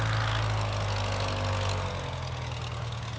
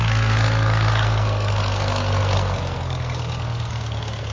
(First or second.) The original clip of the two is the first